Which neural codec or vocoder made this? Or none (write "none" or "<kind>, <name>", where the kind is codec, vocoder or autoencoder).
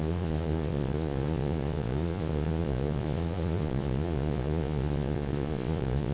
vocoder, Vocos